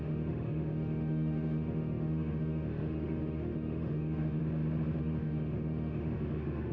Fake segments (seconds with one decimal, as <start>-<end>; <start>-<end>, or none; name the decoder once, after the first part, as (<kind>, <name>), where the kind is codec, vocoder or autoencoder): 0.0-4.4 (autoencoder, DAC-VAE); 5.0-6.7